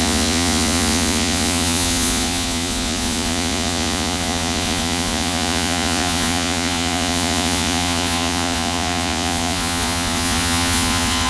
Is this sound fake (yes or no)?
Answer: yes